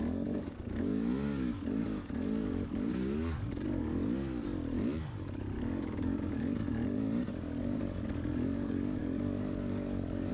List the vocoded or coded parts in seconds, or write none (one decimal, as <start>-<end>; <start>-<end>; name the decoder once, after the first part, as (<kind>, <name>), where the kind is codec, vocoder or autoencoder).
0.0-4.0 (codec, DAC); 5.2-10.3